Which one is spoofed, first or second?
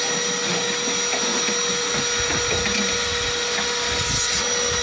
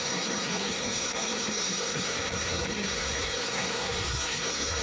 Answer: second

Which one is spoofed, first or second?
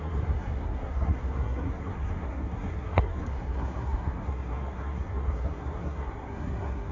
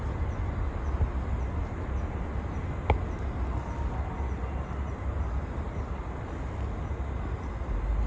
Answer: first